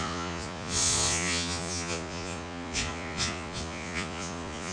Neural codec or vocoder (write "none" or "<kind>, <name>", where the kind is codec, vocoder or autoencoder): vocoder, Vocos